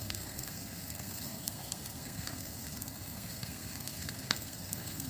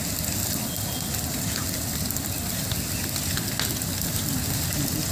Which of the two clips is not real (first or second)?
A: first